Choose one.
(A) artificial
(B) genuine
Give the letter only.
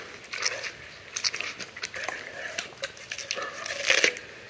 B